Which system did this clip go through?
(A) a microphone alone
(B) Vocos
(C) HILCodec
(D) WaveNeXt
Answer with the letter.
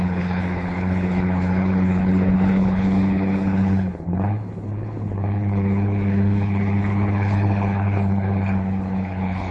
C